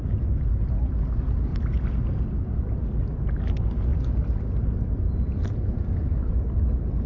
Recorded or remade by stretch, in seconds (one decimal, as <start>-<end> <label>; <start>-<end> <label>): 0.0-1.5 recorded; 1.5-2.2 remade; 2.2-3.9 recorded; 3.9-5.7 remade; 5.7-7.1 recorded